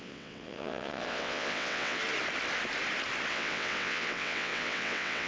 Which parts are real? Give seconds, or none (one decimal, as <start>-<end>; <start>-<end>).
2.0-3.3